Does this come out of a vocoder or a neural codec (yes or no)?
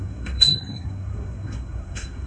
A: yes